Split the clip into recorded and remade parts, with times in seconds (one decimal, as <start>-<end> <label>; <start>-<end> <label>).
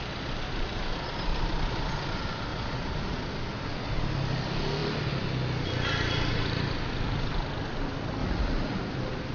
0.0-2.5 recorded; 2.5-3.2 remade; 3.2-8.2 recorded; 8.2-8.8 remade; 8.8-9.3 recorded